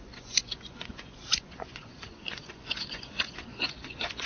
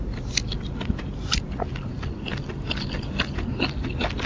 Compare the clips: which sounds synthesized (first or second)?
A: first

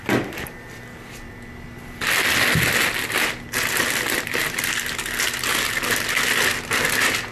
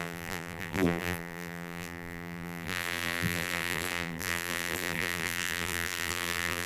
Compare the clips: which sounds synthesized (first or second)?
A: second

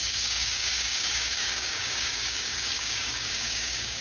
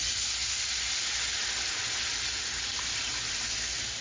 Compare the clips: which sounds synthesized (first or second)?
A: first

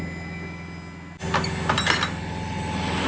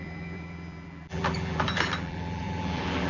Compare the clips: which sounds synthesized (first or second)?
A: second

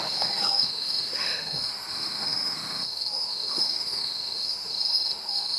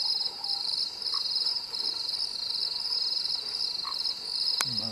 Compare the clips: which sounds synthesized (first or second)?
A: first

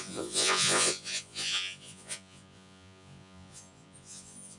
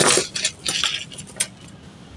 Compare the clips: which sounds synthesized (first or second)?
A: first